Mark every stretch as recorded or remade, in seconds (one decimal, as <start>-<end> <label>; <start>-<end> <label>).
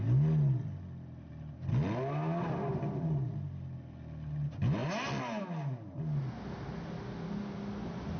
0.0-8.2 recorded